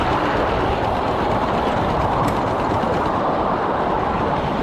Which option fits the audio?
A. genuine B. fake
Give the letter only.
A